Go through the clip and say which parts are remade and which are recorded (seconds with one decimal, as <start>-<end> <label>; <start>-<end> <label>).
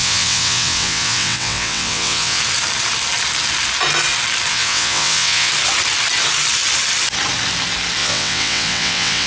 0.0-2.4 remade; 2.4-4.5 recorded; 4.5-5.5 remade; 5.5-8.0 recorded; 8.0-9.3 remade